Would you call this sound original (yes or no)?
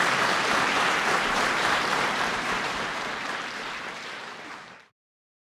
no